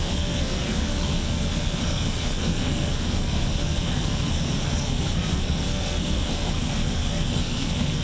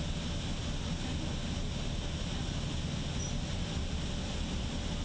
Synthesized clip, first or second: first